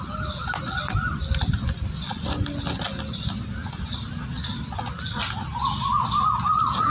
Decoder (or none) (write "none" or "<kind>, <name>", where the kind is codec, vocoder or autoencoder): none